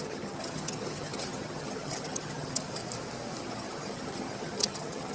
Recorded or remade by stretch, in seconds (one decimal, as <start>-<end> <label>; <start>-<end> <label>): 0.0-2.8 remade; 2.8-3.4 recorded; 3.4-5.1 remade